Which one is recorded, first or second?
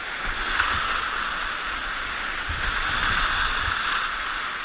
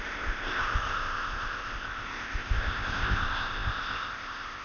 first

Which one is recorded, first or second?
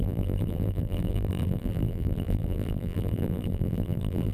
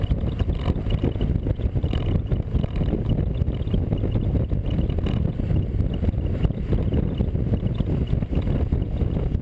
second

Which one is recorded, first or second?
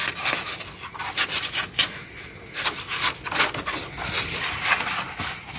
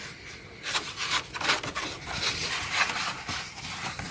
first